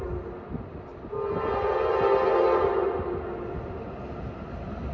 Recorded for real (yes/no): yes